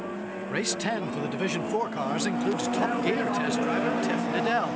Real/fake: real